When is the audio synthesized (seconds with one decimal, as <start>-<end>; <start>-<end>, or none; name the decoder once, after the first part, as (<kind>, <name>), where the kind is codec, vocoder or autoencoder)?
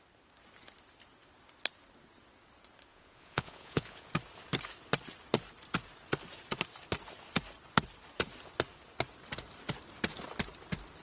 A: 2.9-4.1 (vocoder, Vocos)